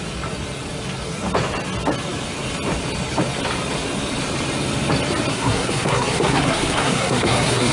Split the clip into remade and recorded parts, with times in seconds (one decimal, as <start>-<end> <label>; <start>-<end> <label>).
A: 0.0-5.3 recorded; 5.3-7.7 remade

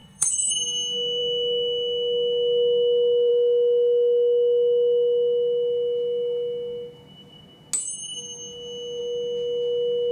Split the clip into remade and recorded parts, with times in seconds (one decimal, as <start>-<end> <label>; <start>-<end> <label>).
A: 0.0-0.5 remade; 0.5-10.1 recorded

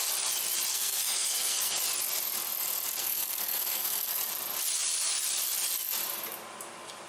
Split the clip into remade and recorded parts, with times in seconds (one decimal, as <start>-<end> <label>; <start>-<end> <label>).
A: 0.0-0.7 recorded; 0.7-1.8 remade; 1.8-3.0 recorded; 3.0-4.2 remade; 4.2-7.1 recorded

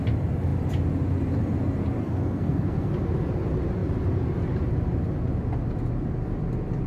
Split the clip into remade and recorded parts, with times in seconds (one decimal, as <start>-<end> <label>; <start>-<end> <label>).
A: 0.0-2.0 recorded; 2.0-2.9 remade; 2.9-6.9 recorded

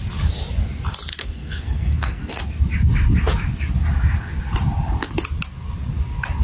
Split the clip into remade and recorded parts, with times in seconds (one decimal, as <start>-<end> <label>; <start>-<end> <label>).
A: 0.0-1.1 recorded; 1.1-2.4 remade; 2.4-6.4 recorded